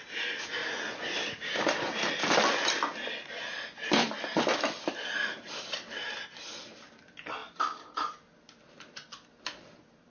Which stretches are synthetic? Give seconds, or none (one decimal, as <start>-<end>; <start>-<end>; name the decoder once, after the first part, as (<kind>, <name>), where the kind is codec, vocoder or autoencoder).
4.0-7.0 (vocoder, BigVGAN v2)

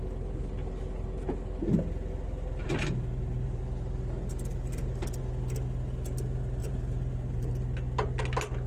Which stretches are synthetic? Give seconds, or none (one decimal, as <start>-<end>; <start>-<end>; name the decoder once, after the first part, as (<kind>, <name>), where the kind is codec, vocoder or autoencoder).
2.6-3.6 (vocoder, BigVGAN v2); 4.5-5.2; 6.6-7.5

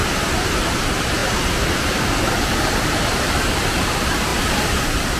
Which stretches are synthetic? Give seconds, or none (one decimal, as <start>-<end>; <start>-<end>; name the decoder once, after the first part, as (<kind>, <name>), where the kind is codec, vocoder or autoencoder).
0.0-5.2 (vocoder, BigVGAN v2)

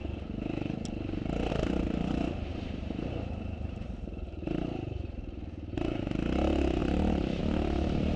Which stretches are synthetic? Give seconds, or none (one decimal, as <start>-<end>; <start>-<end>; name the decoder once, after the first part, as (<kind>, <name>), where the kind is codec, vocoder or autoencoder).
2.5-6.0 (vocoder, BigVGAN v2); 6.8-7.4

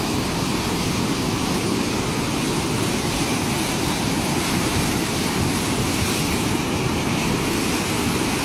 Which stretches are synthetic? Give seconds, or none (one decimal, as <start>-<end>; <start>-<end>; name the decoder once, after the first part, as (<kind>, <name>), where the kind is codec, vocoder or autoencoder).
none

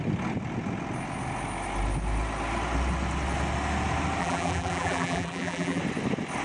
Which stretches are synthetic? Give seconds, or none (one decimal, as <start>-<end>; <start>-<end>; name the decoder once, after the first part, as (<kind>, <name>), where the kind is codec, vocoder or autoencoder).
4.2-5.8 (vocoder, BigVGAN v2)

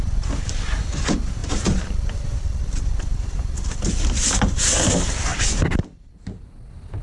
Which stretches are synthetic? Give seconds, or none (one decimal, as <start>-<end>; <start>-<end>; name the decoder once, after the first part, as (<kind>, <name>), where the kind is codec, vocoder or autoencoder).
1.4-2.6 (vocoder, BigVGAN v2)